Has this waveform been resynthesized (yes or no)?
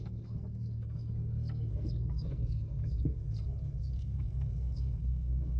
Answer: yes